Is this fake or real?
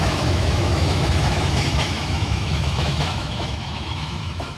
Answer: fake